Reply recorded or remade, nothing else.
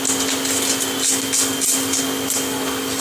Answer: recorded